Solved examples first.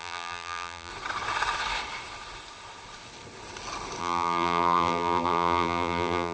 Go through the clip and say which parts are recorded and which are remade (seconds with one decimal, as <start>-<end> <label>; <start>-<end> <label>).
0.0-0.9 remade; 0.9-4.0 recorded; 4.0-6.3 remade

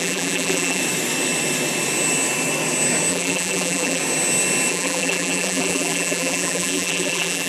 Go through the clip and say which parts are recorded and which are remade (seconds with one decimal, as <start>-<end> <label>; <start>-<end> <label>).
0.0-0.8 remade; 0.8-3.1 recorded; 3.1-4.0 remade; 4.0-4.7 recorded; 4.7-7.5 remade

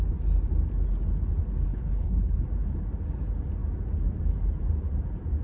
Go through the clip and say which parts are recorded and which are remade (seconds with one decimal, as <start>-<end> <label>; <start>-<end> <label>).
0.0-1.7 recorded; 1.7-2.4 remade; 2.4-5.4 recorded